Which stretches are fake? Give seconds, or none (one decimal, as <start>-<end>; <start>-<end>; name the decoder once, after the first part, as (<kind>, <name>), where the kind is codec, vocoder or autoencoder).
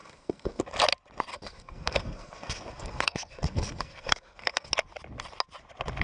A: 0.0-0.6 (codec, SNAC); 1.3-4.7